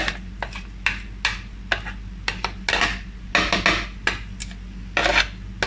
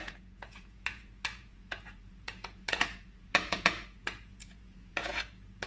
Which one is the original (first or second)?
first